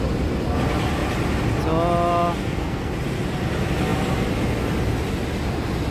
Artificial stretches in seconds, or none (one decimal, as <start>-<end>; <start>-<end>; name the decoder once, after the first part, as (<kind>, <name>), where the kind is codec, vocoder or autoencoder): 2.4-2.9 (codec, SNAC)